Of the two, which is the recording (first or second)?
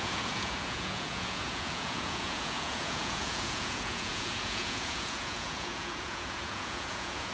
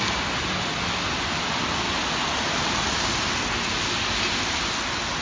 second